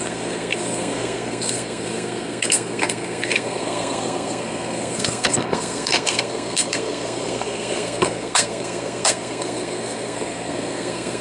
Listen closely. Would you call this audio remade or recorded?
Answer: remade